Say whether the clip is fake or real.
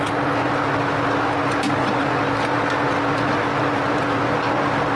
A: real